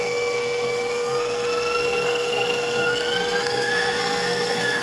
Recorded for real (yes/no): no